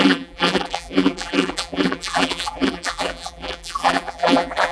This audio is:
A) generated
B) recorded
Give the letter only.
A